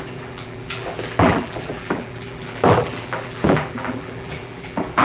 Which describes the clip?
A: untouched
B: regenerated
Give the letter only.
B